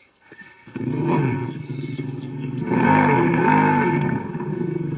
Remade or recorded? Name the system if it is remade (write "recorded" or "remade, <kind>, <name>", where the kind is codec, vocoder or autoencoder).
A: remade, codec, SNAC